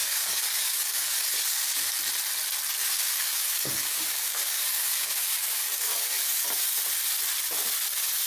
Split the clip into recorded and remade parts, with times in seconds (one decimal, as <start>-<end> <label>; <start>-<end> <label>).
0.0-2.0 remade; 2.0-2.8 recorded; 2.8-6.8 remade; 6.8-8.3 recorded